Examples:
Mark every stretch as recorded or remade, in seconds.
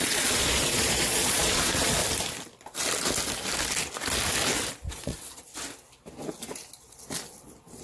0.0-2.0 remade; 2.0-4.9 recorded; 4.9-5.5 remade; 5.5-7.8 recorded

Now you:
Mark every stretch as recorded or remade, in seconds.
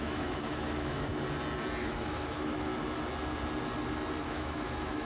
0.0-1.1 remade; 1.1-1.8 recorded; 1.8-2.7 remade; 2.7-4.2 recorded; 4.2-5.1 remade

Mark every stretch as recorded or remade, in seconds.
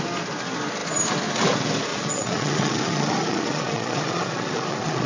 0.0-1.9 recorded; 1.9-5.1 remade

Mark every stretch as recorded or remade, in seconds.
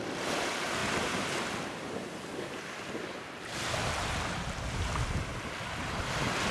0.0-0.8 remade; 0.8-4.7 recorded; 4.7-5.3 remade; 5.3-6.5 recorded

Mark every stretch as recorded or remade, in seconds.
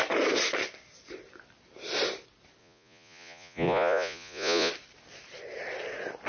0.0-2.6 recorded; 2.6-4.7 remade; 4.7-6.3 recorded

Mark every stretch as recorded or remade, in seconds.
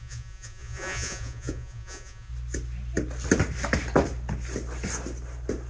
0.0-2.3 remade; 2.3-5.7 recorded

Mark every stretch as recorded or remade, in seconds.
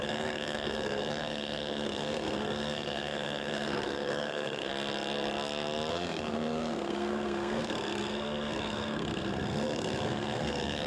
0.0-4.7 remade; 4.7-5.9 recorded; 5.9-10.9 remade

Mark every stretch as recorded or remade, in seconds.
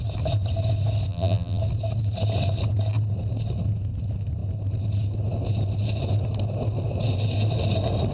0.0-1.1 recorded; 1.1-1.6 remade; 1.6-8.1 recorded